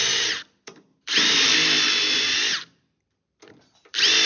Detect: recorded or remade remade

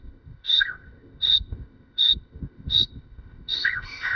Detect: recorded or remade remade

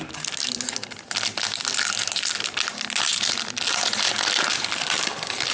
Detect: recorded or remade recorded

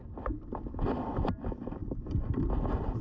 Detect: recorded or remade recorded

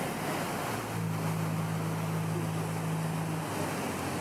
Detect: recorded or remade recorded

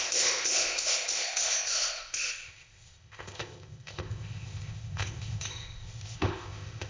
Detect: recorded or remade remade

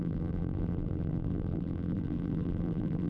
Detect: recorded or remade remade